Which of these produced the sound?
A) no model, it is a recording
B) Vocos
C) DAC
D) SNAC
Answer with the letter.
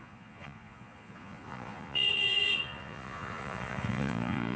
B